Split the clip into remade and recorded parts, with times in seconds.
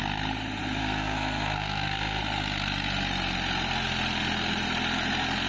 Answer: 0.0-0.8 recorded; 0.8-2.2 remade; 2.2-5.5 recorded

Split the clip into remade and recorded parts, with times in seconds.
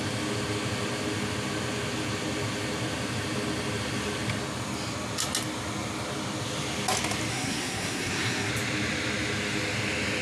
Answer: 0.0-7.3 recorded; 7.3-8.5 remade; 8.5-10.2 recorded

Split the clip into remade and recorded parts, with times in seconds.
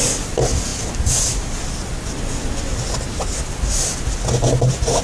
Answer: 0.0-5.0 recorded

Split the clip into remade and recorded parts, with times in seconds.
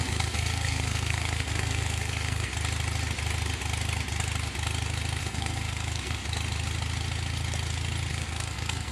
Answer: 0.0-2.5 remade; 2.5-5.2 recorded; 5.2-6.2 remade; 6.2-8.1 recorded; 8.1-8.9 remade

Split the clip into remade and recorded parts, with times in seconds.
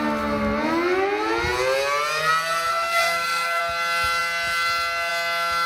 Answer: 0.0-2.7 recorded; 2.7-3.6 remade; 3.6-5.7 recorded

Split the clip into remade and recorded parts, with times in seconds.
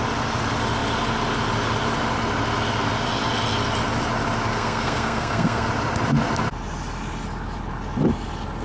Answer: 0.0-4.5 recorded; 4.5-5.7 remade; 5.7-8.6 recorded